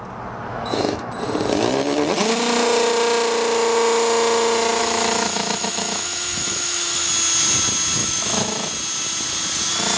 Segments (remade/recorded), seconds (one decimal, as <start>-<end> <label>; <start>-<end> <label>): 0.0-0.5 recorded; 0.5-1.1 remade; 1.1-4.8 recorded; 4.8-7.1 remade; 7.1-8.0 recorded; 8.0-8.7 remade; 8.7-10.0 recorded